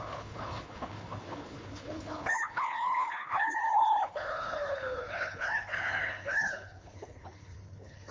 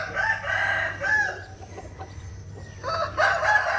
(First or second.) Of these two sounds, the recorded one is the second